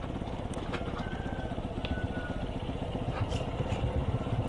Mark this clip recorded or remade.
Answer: recorded